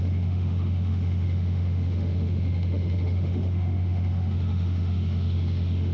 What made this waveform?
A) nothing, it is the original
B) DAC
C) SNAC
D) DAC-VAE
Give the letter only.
D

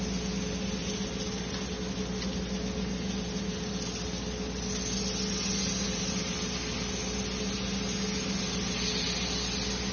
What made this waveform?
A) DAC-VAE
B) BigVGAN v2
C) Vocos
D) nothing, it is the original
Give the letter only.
D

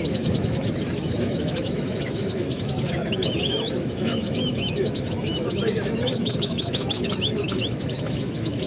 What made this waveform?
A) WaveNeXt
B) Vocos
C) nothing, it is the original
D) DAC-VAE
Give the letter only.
D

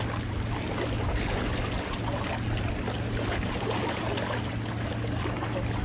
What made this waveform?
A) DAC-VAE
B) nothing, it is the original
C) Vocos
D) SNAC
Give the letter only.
B